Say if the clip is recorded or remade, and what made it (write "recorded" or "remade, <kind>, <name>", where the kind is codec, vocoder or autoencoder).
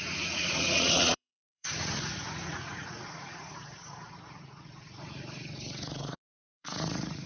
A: remade, vocoder, Vocos